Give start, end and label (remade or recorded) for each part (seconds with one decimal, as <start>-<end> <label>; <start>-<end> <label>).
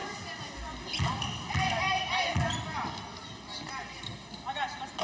0.0-5.0 recorded